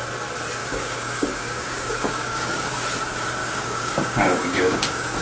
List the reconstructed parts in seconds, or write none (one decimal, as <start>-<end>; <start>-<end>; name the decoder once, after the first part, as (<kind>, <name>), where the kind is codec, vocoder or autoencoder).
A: 0.6-2.7 (codec, DAC); 3.4-5.2

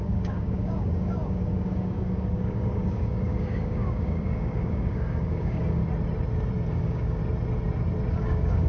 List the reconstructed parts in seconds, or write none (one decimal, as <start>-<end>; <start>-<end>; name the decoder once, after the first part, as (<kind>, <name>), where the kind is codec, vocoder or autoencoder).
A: 0.0-5.8 (codec, DAC); 6.7-7.2; 8.1-8.7